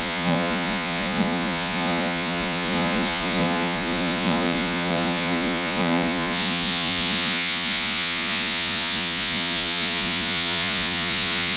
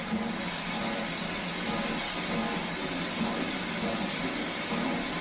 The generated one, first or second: first